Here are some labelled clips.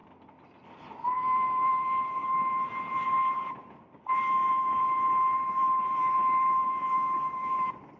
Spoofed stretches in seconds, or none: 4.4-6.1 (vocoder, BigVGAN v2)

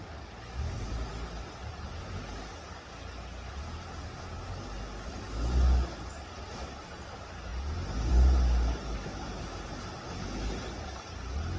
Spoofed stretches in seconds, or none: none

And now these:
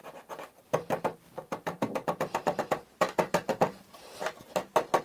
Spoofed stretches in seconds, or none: none

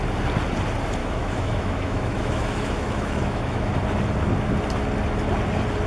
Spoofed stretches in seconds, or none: 1.0-3.7 (autoencoder, DAC-VAE)

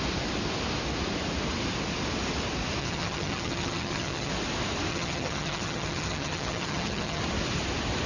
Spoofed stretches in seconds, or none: 2.8-4.3 (vocoder, HiFi-GAN); 4.9-7.2

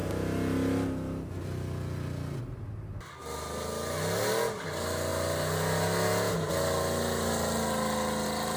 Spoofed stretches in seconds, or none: none

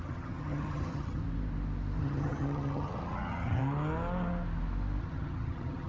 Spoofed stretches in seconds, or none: 0.0-1.2 (vocoder, HiFi-GAN); 2.0-3.6; 5.0-5.9